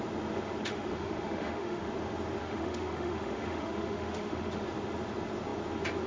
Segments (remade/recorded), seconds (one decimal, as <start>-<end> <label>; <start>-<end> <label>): 0.0-0.6 recorded; 0.6-1.9 remade; 1.9-2.4 recorded; 2.4-4.6 remade; 4.6-6.1 recorded